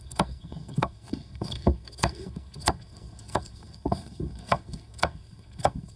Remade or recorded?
remade